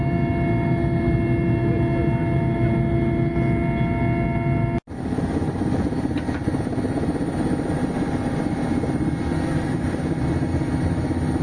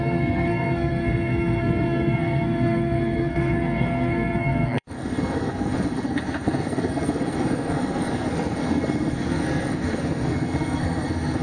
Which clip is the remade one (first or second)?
second